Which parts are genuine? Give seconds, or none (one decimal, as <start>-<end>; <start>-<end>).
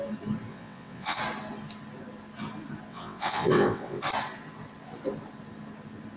0.0-0.5; 1.2-2.9; 4.0-6.2